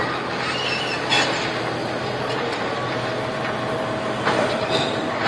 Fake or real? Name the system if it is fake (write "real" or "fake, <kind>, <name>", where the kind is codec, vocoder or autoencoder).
real